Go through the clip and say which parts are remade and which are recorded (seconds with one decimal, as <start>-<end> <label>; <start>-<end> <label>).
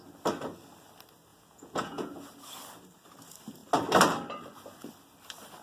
0.0-1.3 recorded; 1.3-2.1 remade; 2.1-5.6 recorded